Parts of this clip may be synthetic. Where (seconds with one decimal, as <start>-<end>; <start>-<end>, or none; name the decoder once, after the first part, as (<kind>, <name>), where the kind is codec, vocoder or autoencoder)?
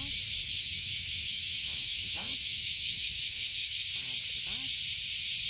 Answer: 0.4-3.7 (autoencoder, DAC-VAE)